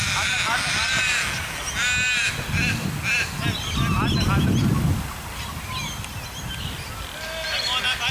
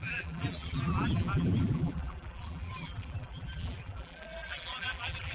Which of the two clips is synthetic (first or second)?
second